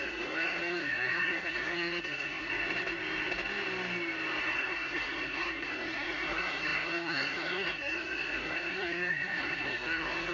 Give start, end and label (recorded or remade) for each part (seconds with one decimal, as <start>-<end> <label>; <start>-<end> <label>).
0.0-2.5 remade; 2.5-4.4 recorded; 4.4-10.3 remade